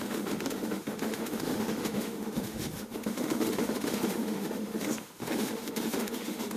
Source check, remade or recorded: remade